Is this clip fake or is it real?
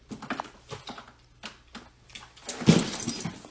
real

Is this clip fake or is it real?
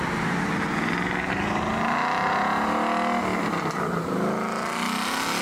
real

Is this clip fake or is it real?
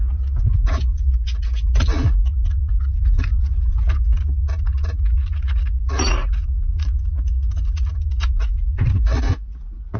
fake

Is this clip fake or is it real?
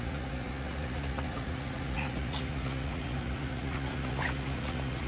fake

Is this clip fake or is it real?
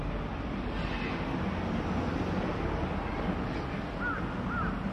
real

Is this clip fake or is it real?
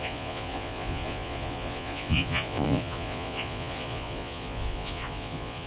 fake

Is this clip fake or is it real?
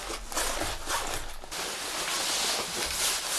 real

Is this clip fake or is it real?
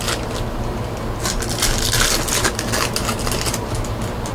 real